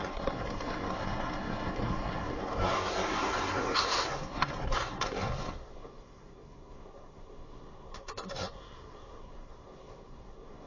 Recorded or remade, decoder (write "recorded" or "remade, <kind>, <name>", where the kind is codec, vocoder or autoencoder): remade, codec, SNAC